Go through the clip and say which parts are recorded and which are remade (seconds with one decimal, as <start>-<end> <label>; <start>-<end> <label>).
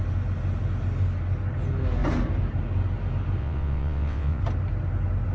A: 0.0-3.4 recorded; 3.4-4.4 remade; 4.4-5.3 recorded